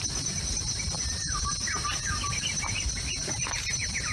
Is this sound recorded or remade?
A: recorded